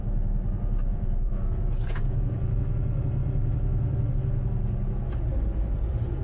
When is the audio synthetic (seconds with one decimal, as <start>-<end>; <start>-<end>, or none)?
0.9-2.5